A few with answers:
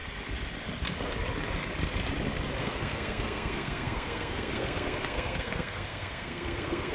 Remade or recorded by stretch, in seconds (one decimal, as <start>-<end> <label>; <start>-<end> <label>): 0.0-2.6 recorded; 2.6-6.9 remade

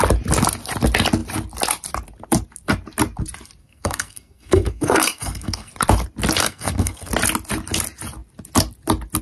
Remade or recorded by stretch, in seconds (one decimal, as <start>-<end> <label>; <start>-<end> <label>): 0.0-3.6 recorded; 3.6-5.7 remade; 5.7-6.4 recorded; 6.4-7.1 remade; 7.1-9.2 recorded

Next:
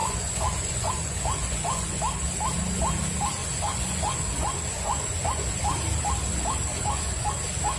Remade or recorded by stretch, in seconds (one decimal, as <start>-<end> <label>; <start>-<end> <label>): 0.0-2.0 remade; 2.0-3.4 recorded; 3.4-5.6 remade; 5.6-6.7 recorded; 6.7-7.3 remade; 7.3-7.8 recorded

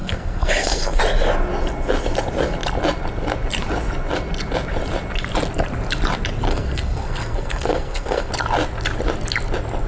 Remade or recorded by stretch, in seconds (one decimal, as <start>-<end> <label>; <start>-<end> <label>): 0.0-1.0 remade; 1.0-6.5 recorded; 6.5-8.3 remade; 8.3-9.9 recorded

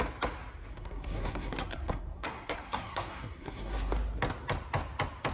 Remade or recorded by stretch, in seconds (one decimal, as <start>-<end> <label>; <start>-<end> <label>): 0.0-0.7 recorded; 0.7-3.9 remade; 3.9-5.3 recorded